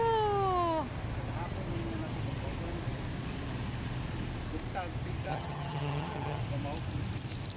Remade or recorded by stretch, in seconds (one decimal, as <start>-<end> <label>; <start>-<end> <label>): 0.0-5.3 recorded; 5.3-6.4 remade; 6.4-7.6 recorded